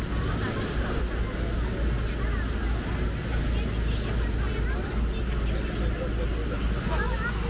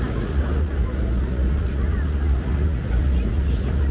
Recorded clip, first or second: first